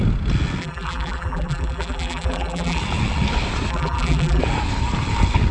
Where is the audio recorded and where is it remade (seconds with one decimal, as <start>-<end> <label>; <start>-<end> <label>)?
0.0-0.6 recorded; 0.6-2.8 remade; 2.8-3.7 recorded; 3.7-4.4 remade; 4.4-5.5 recorded